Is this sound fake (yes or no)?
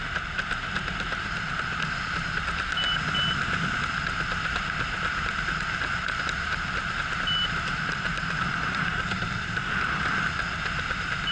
no